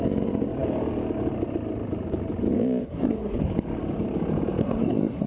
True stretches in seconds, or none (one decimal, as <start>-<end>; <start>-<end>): 0.0-2.8; 3.4-4.6